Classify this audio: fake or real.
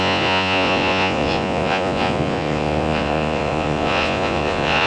fake